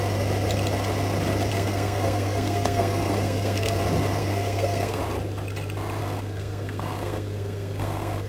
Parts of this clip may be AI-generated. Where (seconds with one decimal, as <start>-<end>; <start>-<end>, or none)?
1.5-3.8; 4.2-5.0; 6.0-8.3

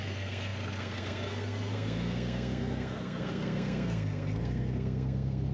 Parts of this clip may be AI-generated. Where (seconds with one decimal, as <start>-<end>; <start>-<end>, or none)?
0.0-5.5